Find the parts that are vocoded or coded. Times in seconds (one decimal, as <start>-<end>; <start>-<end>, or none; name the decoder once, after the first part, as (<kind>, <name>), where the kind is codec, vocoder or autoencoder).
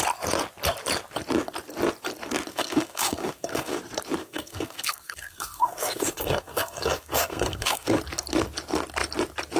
2.5-3.8 (codec, SNAC); 4.2-8.0